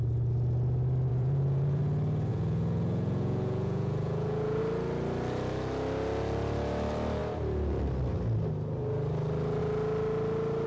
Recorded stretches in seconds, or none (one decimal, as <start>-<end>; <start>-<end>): 0.0-1.1; 1.8-2.3; 4.6-10.7